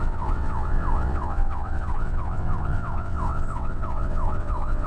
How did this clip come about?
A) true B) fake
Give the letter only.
B